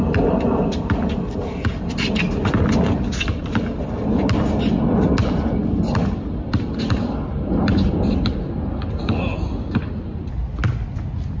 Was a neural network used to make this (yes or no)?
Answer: no